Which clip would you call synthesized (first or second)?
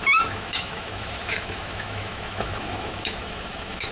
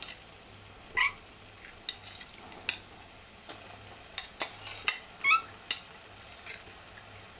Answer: first